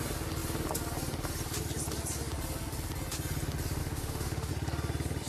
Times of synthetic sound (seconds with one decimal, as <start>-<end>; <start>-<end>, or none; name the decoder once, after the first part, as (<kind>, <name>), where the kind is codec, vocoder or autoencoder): 3.8-4.5 (autoencoder, DAC-VAE)